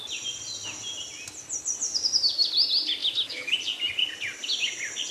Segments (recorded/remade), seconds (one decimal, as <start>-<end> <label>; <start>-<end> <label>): 0.0-3.0 recorded; 3.0-3.6 remade; 3.6-5.1 recorded